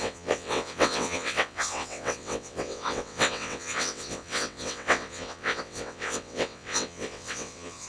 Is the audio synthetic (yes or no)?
yes